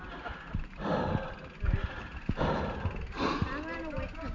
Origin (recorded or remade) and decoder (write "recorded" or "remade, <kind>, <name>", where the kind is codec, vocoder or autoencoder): recorded